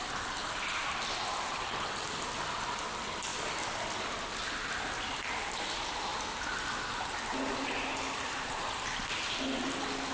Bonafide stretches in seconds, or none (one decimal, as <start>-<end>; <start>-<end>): 0.0-10.1